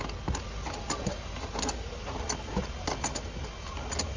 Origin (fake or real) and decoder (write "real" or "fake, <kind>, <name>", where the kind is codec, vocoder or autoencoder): real